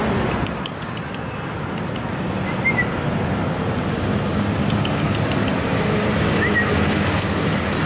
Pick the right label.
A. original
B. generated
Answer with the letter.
A